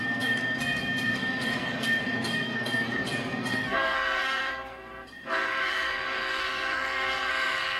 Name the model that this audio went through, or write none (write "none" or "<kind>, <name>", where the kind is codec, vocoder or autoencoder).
codec, SNAC